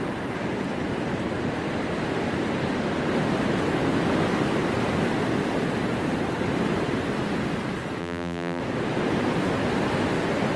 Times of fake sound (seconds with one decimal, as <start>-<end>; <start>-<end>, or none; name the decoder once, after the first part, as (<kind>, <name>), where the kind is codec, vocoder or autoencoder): 8.0-8.6 (vocoder, BigVGAN v2)